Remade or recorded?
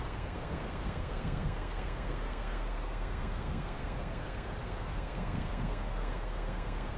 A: remade